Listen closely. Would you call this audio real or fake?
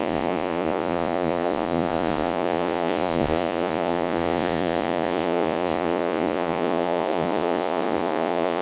fake